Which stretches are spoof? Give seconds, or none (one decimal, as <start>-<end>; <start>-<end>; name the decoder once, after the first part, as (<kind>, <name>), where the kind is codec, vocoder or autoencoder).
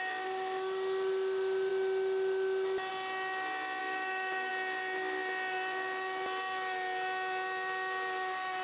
3.8-4.5 (codec, DAC)